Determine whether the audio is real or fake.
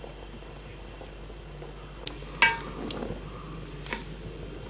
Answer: real